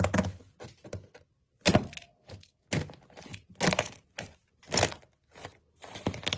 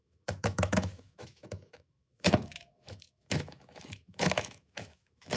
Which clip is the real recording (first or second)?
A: first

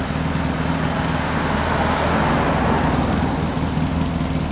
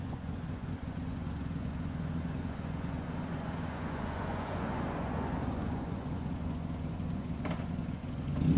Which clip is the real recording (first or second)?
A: first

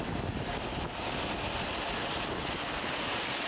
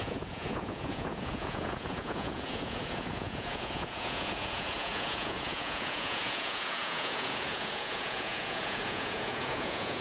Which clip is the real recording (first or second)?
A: first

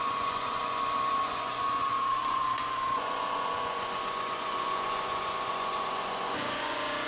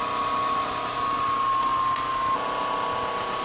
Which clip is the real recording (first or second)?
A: second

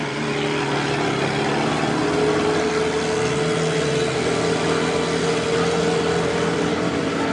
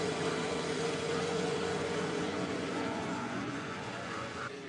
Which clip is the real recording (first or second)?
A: first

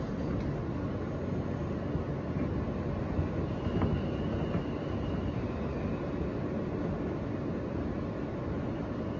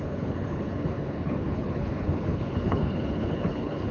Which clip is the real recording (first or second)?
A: first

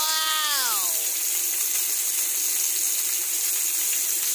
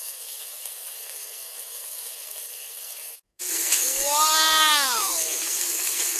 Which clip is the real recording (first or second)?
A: first